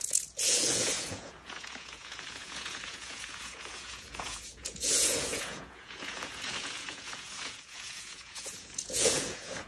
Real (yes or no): no